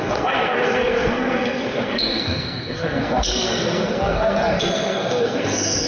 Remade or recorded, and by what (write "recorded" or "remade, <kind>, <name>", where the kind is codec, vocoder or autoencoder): remade, codec, SNAC